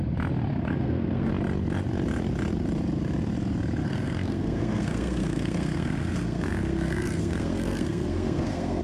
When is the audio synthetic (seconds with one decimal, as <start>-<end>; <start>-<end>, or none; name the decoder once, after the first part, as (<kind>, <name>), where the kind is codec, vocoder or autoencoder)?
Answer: 0.5-1.3 (codec, SNAC); 3.8-8.8